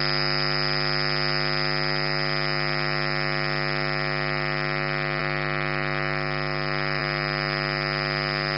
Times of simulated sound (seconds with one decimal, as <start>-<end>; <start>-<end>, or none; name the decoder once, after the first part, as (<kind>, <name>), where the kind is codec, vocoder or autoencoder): none